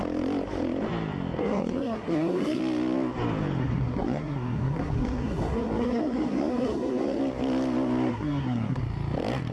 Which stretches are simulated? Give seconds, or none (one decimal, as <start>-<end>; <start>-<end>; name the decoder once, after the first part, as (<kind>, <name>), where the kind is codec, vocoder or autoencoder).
1.4-2.6 (codec, SNAC); 3.6-7.2; 8.1-8.8